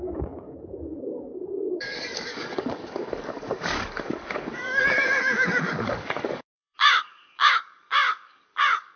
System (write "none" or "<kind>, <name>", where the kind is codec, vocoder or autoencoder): codec, DAC